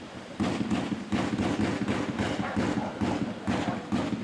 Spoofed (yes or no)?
no